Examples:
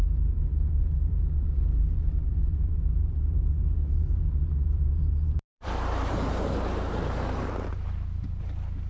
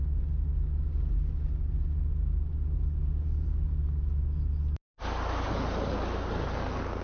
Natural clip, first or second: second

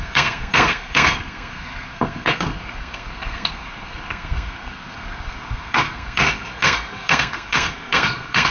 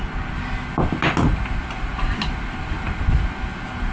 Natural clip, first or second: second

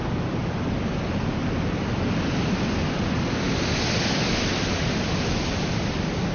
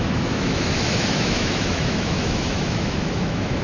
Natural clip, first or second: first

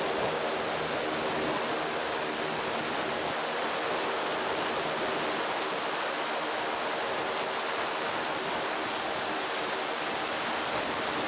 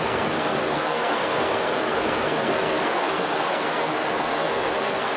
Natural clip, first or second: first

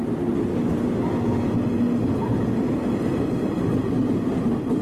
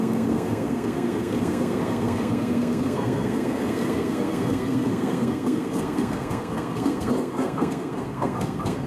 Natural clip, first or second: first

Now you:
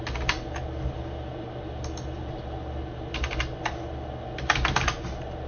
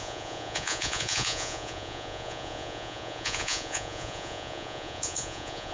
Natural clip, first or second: first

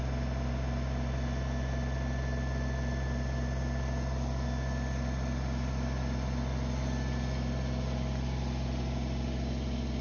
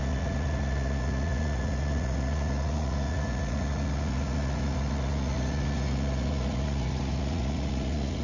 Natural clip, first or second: first